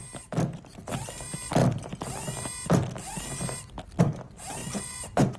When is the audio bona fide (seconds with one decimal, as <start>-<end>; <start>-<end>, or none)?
0.0-4.6